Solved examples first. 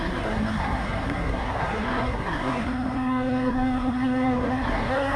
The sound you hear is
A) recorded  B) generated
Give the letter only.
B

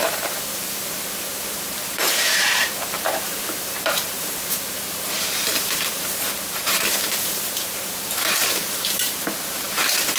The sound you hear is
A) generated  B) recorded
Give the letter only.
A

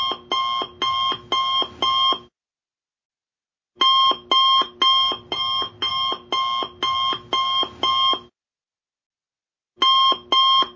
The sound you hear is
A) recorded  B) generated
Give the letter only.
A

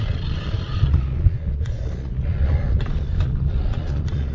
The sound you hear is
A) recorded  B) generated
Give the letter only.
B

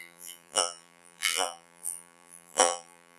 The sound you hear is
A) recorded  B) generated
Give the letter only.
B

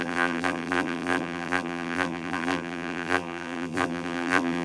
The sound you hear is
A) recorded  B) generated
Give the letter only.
B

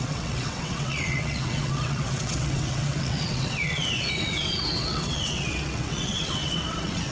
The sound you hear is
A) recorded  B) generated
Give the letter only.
B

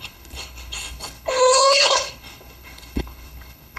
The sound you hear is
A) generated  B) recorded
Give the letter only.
A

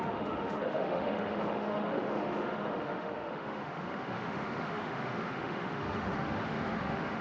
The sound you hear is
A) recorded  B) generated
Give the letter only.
B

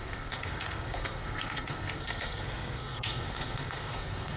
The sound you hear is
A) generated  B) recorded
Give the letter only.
A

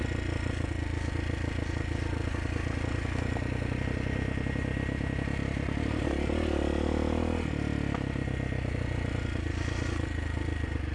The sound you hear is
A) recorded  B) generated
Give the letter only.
A